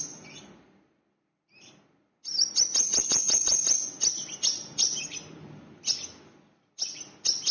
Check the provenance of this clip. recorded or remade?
recorded